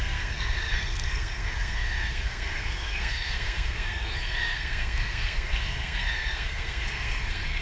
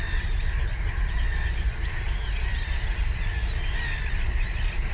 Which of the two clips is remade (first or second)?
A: first